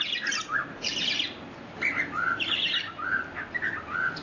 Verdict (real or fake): fake